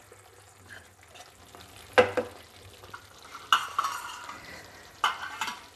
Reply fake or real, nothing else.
real